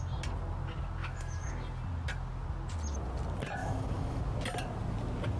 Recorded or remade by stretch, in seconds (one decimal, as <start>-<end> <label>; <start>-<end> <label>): 0.0-1.0 recorded; 1.0-1.5 remade; 1.5-3.6 recorded; 3.6-4.2 remade; 4.2-5.4 recorded